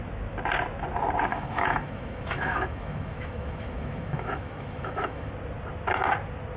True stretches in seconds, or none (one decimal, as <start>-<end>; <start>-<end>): 0.0-1.3; 5.3-6.6